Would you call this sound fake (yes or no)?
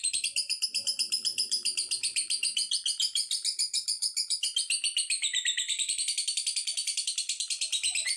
yes